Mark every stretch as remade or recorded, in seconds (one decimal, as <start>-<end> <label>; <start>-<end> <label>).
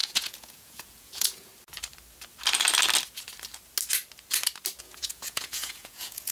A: 0.0-1.5 remade; 1.5-4.8 recorded; 4.8-6.3 remade